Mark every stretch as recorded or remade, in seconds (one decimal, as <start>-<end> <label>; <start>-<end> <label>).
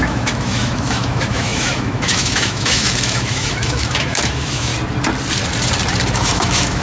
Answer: 0.0-4.7 remade; 4.7-6.1 recorded; 6.1-6.8 remade